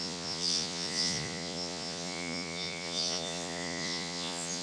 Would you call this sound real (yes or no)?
no